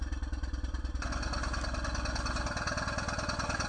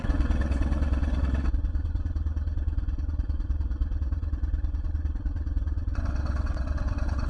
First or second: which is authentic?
first